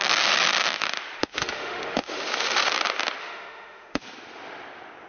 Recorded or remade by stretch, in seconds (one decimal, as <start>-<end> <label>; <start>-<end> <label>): 0.0-1.2 recorded; 1.2-2.7 remade; 2.7-3.2 recorded; 3.2-4.0 remade; 4.0-5.1 recorded